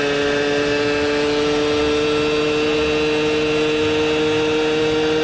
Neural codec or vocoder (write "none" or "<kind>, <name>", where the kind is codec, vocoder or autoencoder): none